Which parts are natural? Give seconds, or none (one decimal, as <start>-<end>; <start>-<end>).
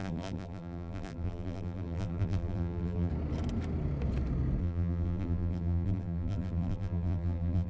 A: 3.1-4.6